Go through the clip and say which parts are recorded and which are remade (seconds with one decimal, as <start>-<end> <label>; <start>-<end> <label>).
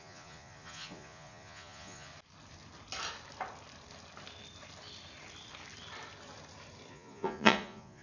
0.0-2.1 remade; 2.1-6.9 recorded; 6.9-8.0 remade